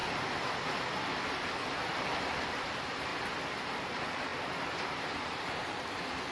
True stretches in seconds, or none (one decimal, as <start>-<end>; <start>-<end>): 0.0-1.3; 3.1-3.6; 4.3-5.2